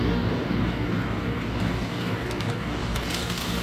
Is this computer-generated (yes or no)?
yes